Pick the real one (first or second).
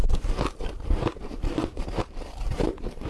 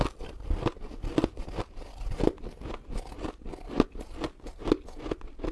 second